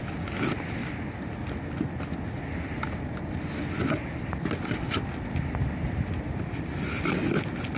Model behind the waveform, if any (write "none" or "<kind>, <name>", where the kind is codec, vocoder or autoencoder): none